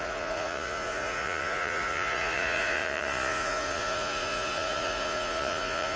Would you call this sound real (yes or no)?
no